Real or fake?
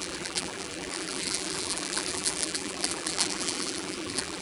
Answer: fake